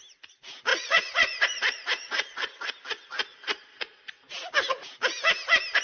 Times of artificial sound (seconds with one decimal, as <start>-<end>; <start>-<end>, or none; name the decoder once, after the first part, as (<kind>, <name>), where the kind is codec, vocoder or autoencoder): 0.7-2.7 (vocoder, Vocos); 3.3-3.8